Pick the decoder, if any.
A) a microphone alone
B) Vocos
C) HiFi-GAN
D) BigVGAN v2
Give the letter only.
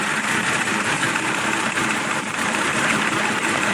D